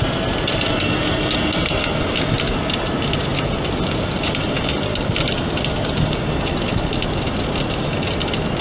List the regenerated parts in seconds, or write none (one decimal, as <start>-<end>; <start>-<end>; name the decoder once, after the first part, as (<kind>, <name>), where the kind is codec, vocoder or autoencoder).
none